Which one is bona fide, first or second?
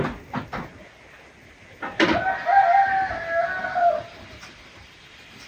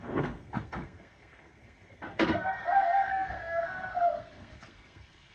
first